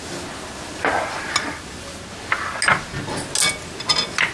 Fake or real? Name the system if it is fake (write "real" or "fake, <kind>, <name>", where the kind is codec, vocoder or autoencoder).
real